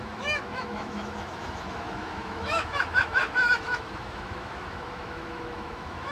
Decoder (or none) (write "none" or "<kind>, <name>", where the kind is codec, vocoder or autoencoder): autoencoder, DAC-VAE